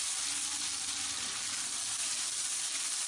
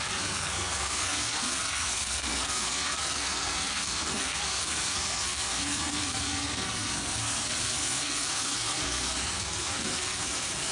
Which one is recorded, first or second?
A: first